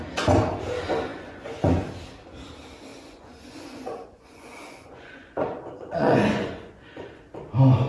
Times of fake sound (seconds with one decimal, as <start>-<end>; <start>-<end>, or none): 1.1-1.9; 2.9-7.2